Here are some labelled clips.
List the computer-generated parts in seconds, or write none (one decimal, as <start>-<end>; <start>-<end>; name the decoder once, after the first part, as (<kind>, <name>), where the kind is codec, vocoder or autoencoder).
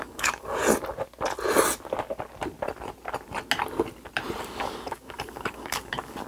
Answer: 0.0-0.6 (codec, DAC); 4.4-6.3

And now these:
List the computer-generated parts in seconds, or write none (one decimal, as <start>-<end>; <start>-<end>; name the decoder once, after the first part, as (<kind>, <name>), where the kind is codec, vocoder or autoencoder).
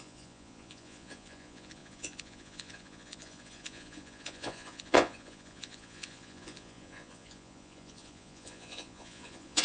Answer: 0.0-9.6 (vocoder, Vocos)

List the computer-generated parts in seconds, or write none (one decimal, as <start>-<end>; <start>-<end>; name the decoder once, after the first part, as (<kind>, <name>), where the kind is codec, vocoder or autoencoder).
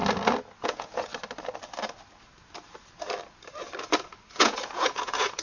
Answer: 0.6-1.1 (vocoder, Vocos); 4.3-5.4